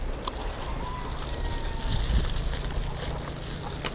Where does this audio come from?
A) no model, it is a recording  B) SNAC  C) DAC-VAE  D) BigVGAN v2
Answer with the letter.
A